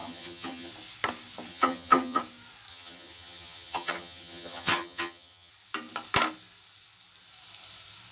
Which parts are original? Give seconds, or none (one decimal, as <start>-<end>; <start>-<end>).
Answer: 0.7-1.5; 2.2-2.7; 5.5-8.1